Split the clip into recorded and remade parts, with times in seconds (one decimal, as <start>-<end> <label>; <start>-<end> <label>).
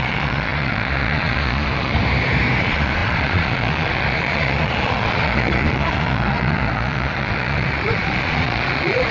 0.0-2.0 remade; 2.0-2.6 recorded; 2.6-9.1 remade